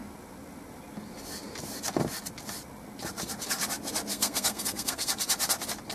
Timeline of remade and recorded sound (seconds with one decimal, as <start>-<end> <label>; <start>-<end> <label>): 0.0-4.1 recorded; 4.1-5.1 remade; 5.1-5.9 recorded